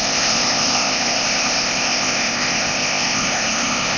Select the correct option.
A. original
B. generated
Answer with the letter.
B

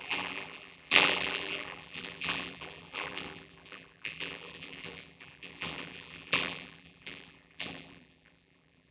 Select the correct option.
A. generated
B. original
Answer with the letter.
A